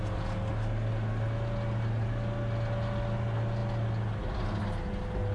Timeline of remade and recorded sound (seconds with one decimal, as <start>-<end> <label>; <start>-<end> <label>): 0.0-5.3 recorded